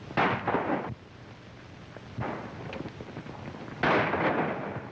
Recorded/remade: recorded